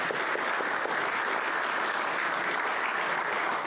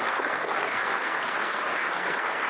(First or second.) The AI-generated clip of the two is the second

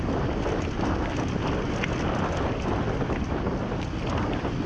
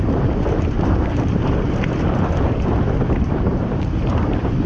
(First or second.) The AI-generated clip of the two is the second